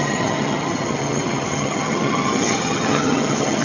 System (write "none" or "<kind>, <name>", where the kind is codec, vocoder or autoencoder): vocoder, HiFi-GAN